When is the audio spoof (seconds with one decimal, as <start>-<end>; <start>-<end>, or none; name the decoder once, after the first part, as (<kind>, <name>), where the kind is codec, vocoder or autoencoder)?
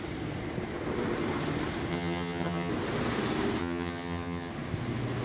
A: 1.9-2.7 (vocoder, HiFi-GAN); 3.6-4.5